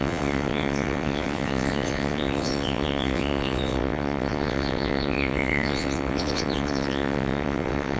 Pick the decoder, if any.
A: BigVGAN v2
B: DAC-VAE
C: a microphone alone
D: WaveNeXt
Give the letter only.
D